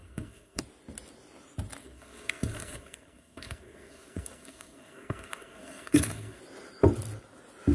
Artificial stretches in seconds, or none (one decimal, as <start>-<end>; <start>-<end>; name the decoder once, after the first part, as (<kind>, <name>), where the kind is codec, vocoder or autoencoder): 0.0-0.6 (codec, SNAC); 1.8-6.4